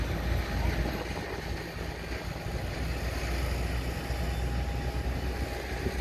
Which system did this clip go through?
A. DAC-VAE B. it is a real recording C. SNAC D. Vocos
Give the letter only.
B